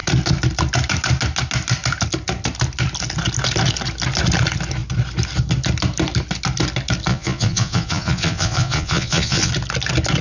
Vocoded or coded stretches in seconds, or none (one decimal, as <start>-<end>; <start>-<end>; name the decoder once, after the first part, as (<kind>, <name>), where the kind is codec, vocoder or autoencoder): 7.1-9.5 (vocoder, Vocos)

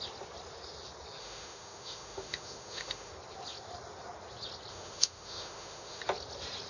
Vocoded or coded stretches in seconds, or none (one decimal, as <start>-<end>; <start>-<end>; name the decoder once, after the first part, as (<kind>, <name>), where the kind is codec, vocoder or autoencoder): 1.2-3.1 (autoencoder, DAC-VAE); 4.7-6.0

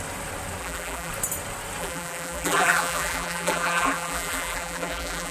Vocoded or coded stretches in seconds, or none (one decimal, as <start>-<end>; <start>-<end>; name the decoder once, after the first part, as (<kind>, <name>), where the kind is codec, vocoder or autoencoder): 0.6-1.1 (vocoder, BigVGAN v2); 1.8-5.3